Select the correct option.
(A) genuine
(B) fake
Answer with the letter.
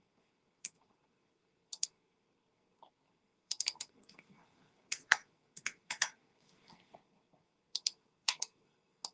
B